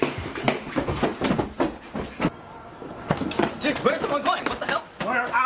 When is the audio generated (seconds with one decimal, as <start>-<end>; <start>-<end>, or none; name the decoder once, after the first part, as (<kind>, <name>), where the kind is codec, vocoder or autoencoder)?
none